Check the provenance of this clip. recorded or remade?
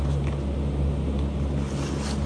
recorded